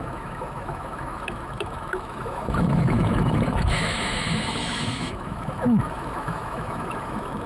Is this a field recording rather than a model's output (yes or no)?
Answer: no